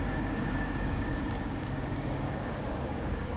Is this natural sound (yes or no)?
no